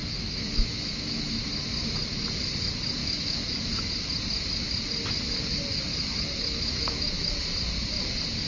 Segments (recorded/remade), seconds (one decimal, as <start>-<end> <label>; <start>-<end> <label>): 0.0-1.5 remade; 1.5-3.0 recorded; 3.0-3.9 remade; 3.9-5.9 recorded; 5.9-7.3 remade; 7.3-8.5 recorded